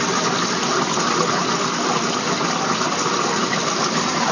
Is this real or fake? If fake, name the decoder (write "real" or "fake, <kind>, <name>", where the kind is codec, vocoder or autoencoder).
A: real